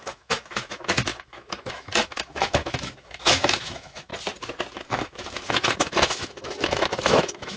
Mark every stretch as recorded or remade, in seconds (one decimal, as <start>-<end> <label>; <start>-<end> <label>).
0.0-4.1 remade; 4.1-4.7 recorded; 4.7-7.6 remade